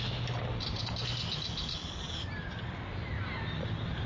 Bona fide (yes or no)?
yes